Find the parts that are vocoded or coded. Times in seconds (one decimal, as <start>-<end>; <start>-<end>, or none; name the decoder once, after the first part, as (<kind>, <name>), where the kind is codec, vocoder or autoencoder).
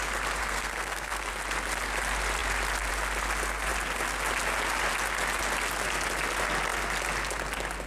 0.4-1.3 (codec, SNAC)